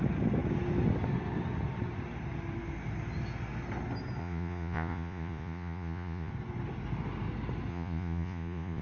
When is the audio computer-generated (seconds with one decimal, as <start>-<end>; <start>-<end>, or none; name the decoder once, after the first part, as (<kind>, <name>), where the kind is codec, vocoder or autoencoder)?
4.2-6.3 (vocoder, Vocos); 7.7-8.8

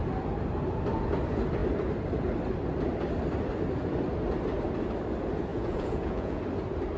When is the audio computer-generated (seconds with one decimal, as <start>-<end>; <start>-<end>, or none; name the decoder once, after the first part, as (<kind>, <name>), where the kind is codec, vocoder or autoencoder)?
5.5-6.4 (vocoder, Vocos)

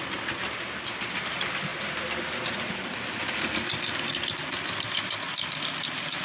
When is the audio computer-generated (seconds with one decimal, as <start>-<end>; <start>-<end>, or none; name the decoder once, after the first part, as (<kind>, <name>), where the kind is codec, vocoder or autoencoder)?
none

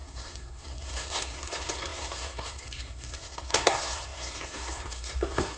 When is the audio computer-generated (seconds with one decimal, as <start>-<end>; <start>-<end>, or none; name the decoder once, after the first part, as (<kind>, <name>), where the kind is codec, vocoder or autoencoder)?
0.0-5.6 (codec, SNAC)

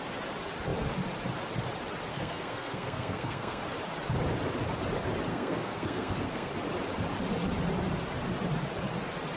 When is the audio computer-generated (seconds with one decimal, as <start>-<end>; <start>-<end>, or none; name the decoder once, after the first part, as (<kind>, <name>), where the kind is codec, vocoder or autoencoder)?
2.1-3.6 (codec, SNAC); 5.3-6.5

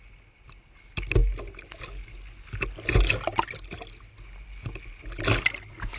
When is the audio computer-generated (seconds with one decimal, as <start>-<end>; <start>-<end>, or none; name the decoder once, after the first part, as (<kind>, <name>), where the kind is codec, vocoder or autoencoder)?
none

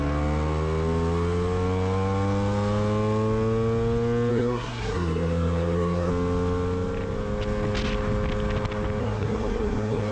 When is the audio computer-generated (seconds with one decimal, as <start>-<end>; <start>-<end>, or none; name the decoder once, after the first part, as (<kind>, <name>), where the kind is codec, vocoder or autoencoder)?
4.3-6.1 (codec, SNAC); 9.0-10.1